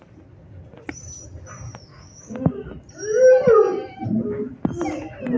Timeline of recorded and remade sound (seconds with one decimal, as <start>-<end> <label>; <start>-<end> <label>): 0.0-1.9 recorded; 1.9-2.5 remade; 2.5-5.4 recorded